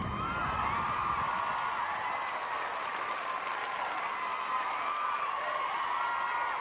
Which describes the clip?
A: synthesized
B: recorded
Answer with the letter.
B